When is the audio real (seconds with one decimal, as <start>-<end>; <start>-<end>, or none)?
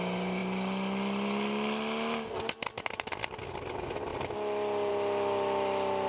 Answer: 0.0-6.1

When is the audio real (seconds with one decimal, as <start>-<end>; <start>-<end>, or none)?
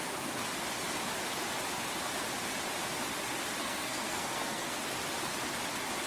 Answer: 0.0-3.6; 4.8-6.1